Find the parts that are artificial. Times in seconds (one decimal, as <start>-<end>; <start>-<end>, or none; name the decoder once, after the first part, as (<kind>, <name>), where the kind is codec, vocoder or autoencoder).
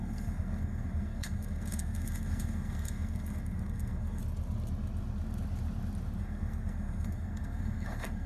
0.0-4.2 (codec, SNAC); 6.2-8.3